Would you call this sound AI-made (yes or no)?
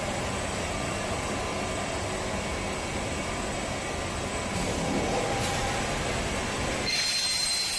no